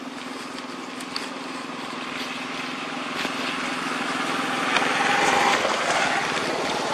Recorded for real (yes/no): yes